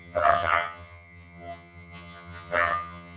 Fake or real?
fake